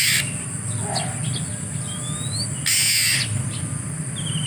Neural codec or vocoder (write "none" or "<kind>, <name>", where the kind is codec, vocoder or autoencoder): none